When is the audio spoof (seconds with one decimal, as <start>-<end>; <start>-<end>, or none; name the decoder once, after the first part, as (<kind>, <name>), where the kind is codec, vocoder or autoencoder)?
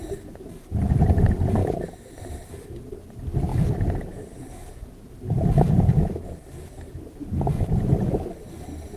none